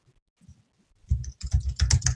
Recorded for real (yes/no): yes